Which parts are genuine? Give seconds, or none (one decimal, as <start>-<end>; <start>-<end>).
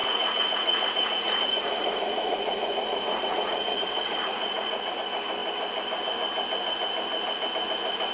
4.9-8.1